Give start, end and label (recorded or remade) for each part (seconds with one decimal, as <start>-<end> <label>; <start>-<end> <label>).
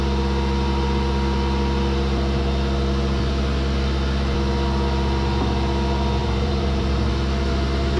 0.0-6.2 recorded; 6.2-7.1 remade; 7.1-8.0 recorded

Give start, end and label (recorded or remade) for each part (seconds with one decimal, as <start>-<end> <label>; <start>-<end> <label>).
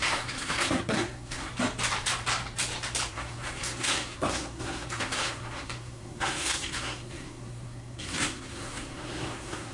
0.0-1.5 remade; 1.5-3.1 recorded; 3.1-9.7 remade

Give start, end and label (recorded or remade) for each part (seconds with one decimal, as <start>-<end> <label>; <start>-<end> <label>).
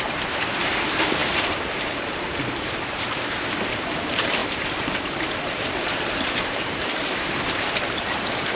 0.0-8.6 remade